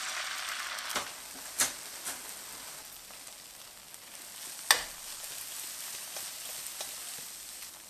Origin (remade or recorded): recorded